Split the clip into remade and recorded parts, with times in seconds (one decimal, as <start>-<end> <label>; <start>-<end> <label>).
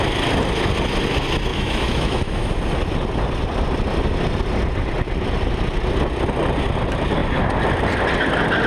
0.0-1.5 recorded; 1.5-2.5 remade; 2.5-8.7 recorded